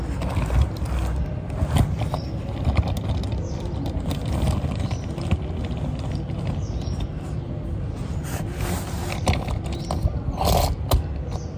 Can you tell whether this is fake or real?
real